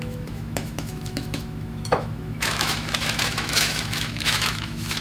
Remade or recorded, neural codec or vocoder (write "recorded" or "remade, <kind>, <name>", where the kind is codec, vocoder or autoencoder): remade, autoencoder, DAC-VAE